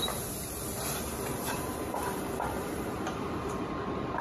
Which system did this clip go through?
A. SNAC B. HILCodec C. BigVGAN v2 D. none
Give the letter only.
C